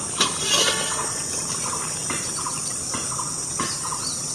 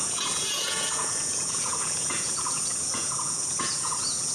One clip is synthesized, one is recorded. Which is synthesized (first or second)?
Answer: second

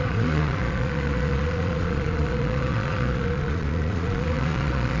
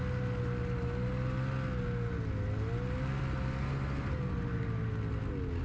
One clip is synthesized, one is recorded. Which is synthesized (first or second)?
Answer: first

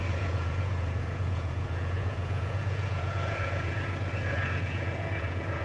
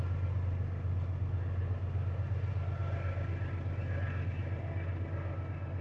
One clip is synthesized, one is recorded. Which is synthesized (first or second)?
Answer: first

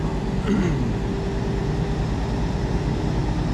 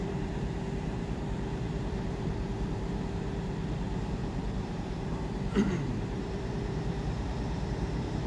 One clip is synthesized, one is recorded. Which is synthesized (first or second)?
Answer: second